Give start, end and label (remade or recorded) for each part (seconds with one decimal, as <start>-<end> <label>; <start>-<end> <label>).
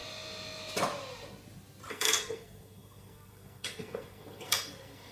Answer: 0.0-1.9 recorded; 1.9-5.1 remade